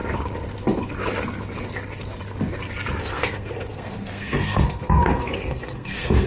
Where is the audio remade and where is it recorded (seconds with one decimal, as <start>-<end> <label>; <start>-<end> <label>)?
0.0-3.0 recorded; 3.0-6.3 remade